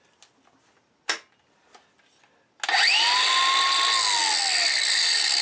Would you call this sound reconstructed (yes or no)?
no